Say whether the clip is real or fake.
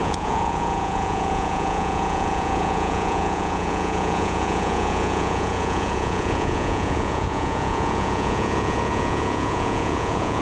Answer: fake